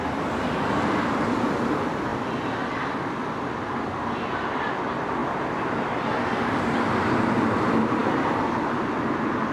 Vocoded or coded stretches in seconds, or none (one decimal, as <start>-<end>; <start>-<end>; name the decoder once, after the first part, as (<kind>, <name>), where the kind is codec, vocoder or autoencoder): 5.2-6.1 (vocoder, BigVGAN v2); 8.0-8.9